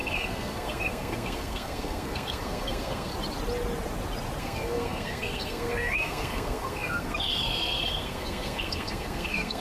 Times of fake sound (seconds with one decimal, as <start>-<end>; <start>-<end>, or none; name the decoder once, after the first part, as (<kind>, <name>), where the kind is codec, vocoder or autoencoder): 0.0-3.1 (codec, SNAC); 4.4-9.6